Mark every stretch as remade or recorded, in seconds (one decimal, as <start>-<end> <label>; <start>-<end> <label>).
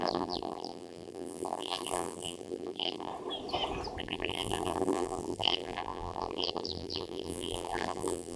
0.0-3.1 remade; 3.1-4.0 recorded; 4.0-8.4 remade